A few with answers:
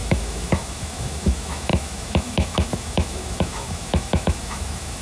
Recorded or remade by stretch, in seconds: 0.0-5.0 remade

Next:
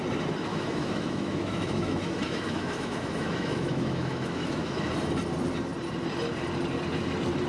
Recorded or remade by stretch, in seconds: 0.0-0.5 recorded; 0.5-4.8 remade; 4.8-7.5 recorded